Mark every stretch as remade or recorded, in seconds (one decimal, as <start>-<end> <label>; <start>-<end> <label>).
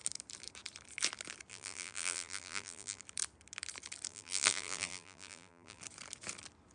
0.0-1.5 recorded; 1.5-3.0 remade; 3.0-4.1 recorded; 4.1-5.8 remade; 5.8-6.7 recorded